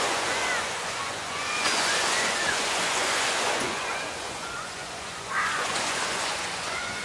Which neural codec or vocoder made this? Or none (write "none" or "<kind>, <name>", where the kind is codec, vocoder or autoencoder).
vocoder, Vocos